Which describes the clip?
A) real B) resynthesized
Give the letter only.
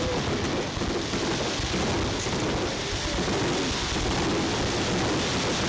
A